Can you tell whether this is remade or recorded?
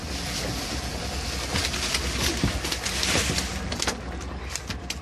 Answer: recorded